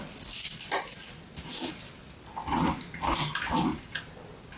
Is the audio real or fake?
real